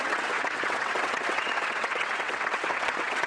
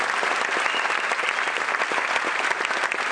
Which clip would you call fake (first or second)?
first